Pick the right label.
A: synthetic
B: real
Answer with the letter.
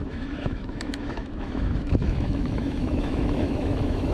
A